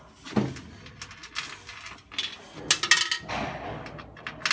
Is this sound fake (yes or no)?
no